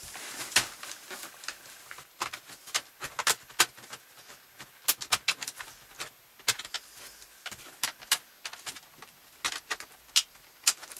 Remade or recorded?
recorded